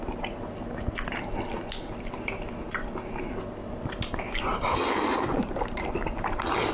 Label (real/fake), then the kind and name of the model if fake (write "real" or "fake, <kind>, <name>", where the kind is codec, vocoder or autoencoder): real